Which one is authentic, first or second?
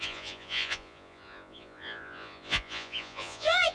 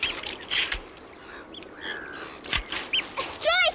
second